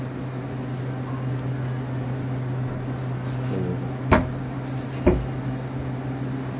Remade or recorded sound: recorded